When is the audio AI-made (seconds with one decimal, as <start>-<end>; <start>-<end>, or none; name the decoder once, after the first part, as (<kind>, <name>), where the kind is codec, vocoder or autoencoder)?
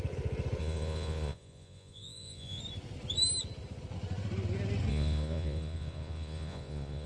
0.6-2.6 (vocoder, Vocos); 4.9-7.1